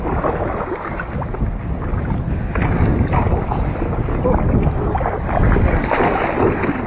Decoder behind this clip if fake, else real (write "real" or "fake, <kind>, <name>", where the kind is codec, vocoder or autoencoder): real